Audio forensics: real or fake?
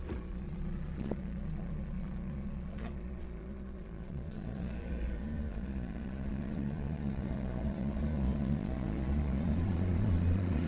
fake